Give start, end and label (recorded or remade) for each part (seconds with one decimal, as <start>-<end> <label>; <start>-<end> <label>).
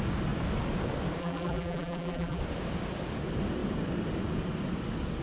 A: 0.0-1.2 recorded; 1.2-2.4 remade; 2.4-5.2 recorded